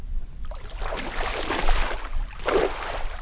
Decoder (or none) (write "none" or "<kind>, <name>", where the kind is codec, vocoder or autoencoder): none